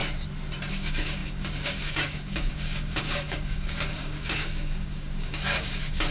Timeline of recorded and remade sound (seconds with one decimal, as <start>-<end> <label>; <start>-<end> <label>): 0.0-0.7 recorded; 0.7-6.1 remade